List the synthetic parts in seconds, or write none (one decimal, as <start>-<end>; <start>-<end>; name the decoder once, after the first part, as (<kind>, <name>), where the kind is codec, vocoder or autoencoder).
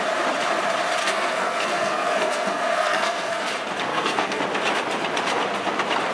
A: 1.0-3.5 (codec, SNAC); 3.9-4.4